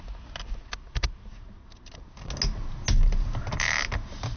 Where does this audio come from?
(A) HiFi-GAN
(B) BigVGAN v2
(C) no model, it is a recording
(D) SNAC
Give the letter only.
C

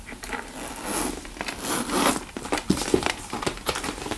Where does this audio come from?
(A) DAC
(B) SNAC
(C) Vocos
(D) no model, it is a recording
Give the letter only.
D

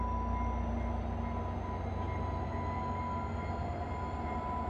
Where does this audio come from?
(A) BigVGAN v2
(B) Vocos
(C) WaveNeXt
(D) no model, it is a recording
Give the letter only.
D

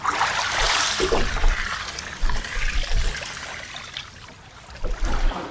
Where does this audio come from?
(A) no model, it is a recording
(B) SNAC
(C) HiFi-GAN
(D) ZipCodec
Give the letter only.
A